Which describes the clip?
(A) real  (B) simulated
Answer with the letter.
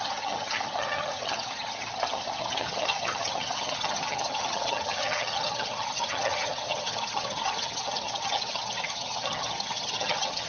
B